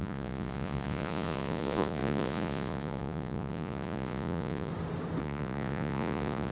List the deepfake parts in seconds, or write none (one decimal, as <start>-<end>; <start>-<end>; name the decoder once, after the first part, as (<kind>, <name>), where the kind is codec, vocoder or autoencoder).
0.0-4.7 (vocoder, Vocos); 5.2-6.5